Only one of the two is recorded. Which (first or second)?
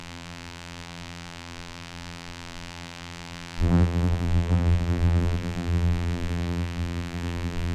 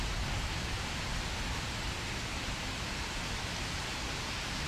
second